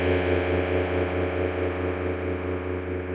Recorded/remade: recorded